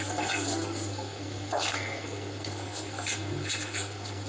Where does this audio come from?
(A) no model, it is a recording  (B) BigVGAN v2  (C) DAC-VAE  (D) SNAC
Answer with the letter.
D